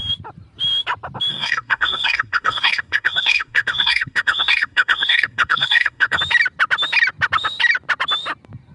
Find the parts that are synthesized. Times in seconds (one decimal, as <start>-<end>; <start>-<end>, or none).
1.3-6.2